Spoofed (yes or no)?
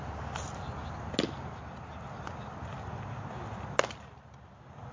no